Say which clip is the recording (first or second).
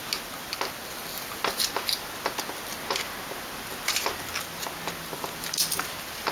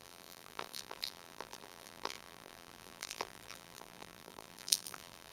first